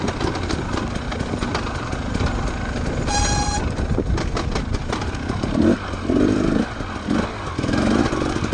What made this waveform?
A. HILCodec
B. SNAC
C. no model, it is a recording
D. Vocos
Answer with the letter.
C